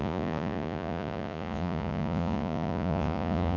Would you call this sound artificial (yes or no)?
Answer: yes